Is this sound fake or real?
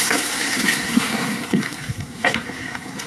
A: fake